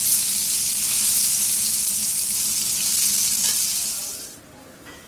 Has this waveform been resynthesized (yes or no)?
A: no